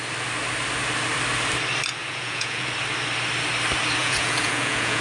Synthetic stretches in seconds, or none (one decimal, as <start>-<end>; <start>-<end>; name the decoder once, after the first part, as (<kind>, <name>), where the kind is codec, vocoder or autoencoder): 2.0-2.7 (vocoder, Vocos); 4.0-5.0